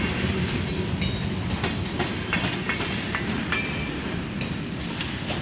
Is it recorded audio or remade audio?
remade